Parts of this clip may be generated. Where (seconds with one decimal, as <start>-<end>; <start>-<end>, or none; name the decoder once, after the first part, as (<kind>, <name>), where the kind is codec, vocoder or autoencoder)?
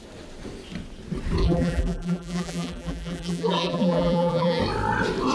1.4-4.6 (vocoder, BigVGAN v2)